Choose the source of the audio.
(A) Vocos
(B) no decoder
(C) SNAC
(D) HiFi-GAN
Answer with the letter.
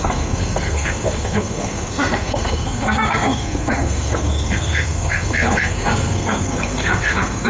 C